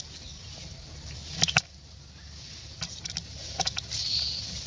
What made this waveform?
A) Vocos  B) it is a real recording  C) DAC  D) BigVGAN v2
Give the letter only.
B